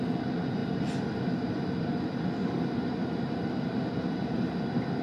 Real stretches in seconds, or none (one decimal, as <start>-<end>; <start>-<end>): 0.0-5.0